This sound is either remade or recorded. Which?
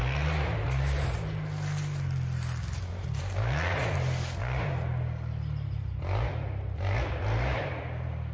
recorded